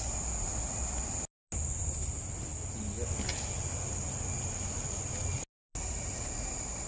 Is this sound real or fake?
real